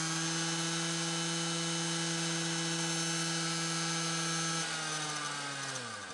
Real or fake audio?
real